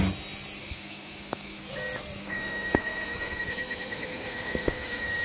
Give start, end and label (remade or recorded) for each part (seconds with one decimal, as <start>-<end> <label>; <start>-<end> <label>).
0.0-0.6 recorded; 0.6-1.7 remade; 1.7-2.2 recorded; 2.2-5.2 remade